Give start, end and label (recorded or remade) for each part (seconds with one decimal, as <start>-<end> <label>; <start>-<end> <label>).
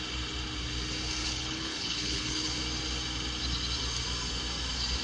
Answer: 0.0-1.2 recorded; 1.2-2.6 remade; 2.6-5.0 recorded